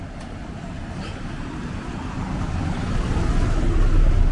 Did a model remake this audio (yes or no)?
no